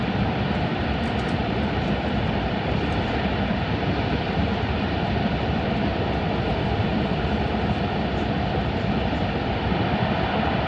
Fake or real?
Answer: fake